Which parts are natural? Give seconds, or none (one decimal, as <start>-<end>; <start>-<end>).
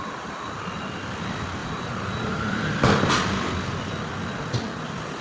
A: 0.0-1.6; 2.7-5.2